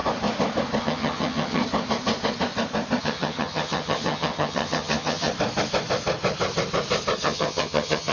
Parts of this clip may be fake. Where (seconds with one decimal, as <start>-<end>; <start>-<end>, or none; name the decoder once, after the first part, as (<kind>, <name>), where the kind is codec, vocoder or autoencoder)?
0.8-1.6 (vocoder, HiFi-GAN); 3.0-5.3; 7.2-8.1